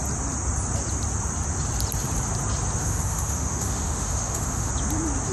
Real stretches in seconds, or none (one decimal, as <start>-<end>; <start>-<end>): 0.0-2.8; 4.7-5.3